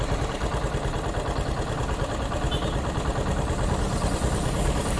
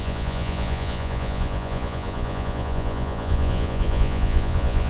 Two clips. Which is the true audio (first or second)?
first